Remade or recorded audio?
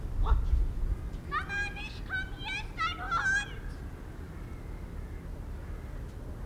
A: recorded